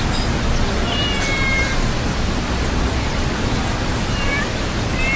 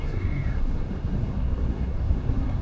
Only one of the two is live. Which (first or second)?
first